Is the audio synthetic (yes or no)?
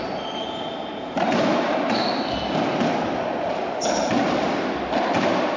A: no